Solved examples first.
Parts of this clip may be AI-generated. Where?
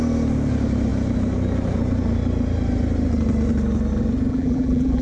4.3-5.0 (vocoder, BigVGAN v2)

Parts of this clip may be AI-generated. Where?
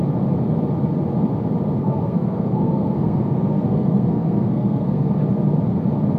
1.8-5.1 (codec, SNAC)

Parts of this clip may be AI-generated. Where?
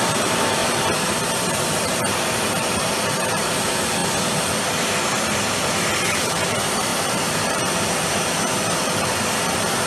0.0-0.6 (vocoder, BigVGAN v2); 2.0-4.0; 6.1-9.9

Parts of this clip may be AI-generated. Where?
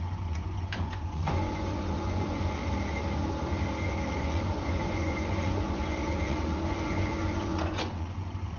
0.0-2.6 (vocoder, Vocos); 4.2-8.6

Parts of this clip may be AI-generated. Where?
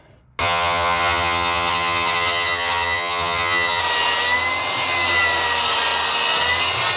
0.4-3.8 (vocoder, HiFi-GAN)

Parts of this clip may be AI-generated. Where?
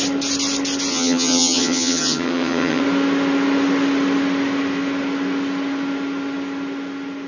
0.9-2.8 (vocoder, HiFi-GAN)